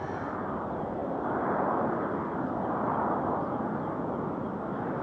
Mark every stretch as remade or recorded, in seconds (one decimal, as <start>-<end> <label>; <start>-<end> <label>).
0.0-5.0 recorded